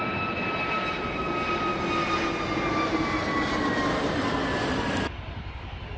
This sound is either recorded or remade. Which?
recorded